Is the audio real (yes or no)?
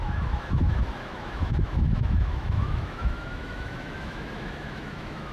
no